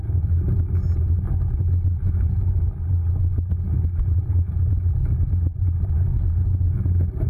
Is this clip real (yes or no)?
yes